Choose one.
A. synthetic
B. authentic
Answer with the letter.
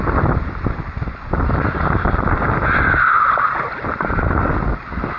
B